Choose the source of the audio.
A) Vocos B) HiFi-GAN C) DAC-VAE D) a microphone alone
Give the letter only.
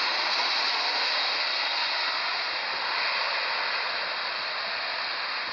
D